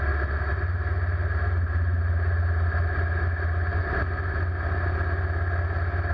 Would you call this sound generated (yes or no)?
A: no